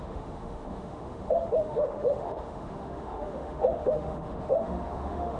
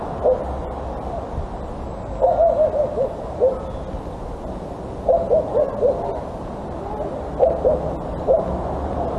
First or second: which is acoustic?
second